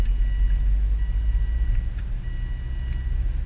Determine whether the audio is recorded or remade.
recorded